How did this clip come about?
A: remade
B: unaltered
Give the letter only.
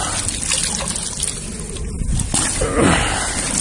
B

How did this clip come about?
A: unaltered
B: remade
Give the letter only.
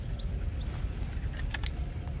A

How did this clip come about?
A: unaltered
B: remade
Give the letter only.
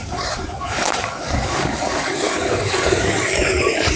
B